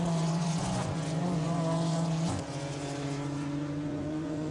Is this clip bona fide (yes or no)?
no